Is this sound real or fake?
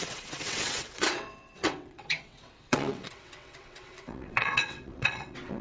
fake